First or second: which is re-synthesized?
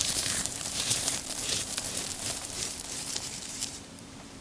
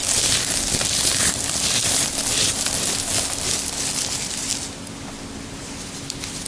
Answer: first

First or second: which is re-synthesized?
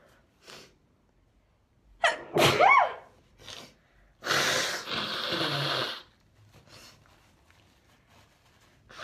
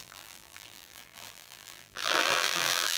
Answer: second